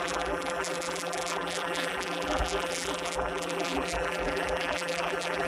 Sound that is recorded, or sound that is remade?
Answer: remade